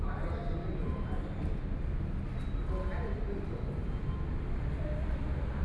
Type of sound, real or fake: real